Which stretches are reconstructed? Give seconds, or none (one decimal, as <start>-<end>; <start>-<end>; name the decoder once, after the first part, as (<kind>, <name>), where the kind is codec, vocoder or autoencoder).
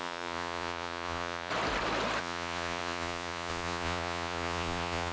0.0-1.5 (vocoder, Vocos); 2.2-5.1